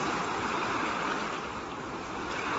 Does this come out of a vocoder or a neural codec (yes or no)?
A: no